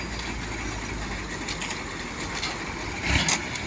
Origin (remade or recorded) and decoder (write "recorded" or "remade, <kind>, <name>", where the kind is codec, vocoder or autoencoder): recorded